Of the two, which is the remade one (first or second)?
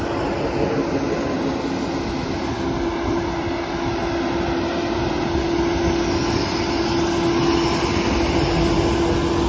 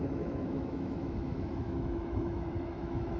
second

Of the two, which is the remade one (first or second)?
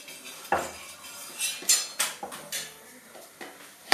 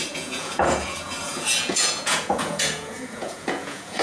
second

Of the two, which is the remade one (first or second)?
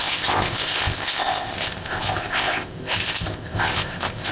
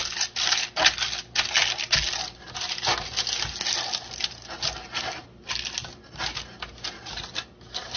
first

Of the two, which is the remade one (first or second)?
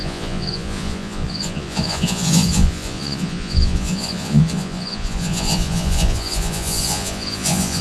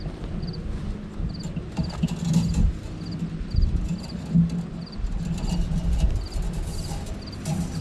first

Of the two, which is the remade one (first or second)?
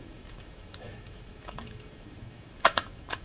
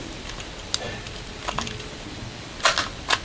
first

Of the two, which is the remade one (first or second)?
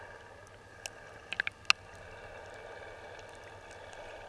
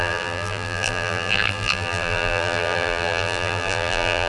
second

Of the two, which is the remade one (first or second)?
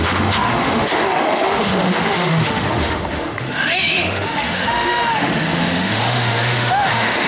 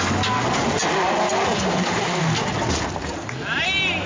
first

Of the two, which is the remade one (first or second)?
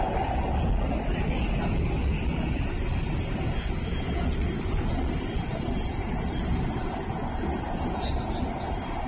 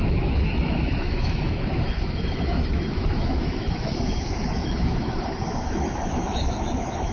second